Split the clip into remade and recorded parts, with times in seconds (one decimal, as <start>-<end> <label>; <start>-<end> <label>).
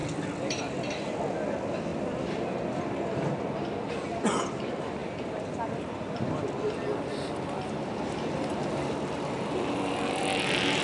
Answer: 0.0-1.1 remade; 1.1-1.9 recorded; 1.9-2.6 remade; 2.6-5.0 recorded; 5.0-9.3 remade; 9.3-10.8 recorded